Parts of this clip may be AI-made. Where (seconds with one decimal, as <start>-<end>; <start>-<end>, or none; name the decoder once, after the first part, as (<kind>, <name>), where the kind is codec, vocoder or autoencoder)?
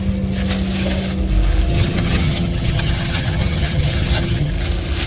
1.7-4.5 (vocoder, HiFi-GAN)